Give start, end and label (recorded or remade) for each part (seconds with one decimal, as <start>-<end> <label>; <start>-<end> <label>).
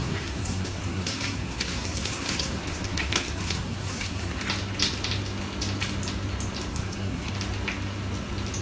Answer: 0.0-4.4 remade; 4.4-6.7 recorded; 6.7-7.3 remade; 7.3-8.6 recorded